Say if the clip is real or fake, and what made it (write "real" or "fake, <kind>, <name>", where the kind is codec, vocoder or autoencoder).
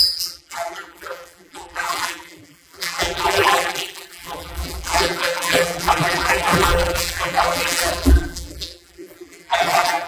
fake, vocoder, BigVGAN v2